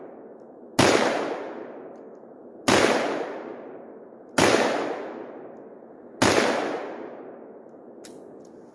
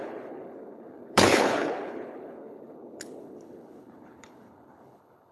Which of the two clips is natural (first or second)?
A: first